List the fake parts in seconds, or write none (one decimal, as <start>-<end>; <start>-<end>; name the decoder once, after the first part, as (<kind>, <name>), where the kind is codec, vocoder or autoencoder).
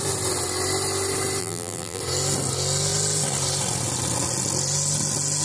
1.4-2.0 (vocoder, BigVGAN v2)